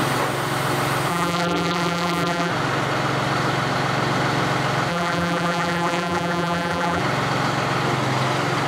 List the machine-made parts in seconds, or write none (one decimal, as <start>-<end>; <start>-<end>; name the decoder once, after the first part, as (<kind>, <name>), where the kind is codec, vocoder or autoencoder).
1.1-2.5 (vocoder, BigVGAN v2); 4.9-7.0